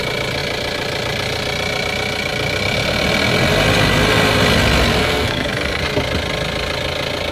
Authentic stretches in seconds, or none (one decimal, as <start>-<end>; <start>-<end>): 0.0-5.0; 5.8-7.3